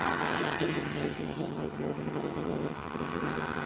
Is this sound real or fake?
fake